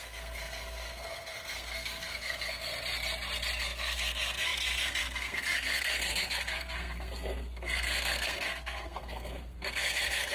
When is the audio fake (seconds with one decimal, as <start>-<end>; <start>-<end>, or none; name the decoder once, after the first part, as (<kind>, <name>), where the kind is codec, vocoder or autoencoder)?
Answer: 0.0-2.7 (codec, SNAC); 3.6-10.3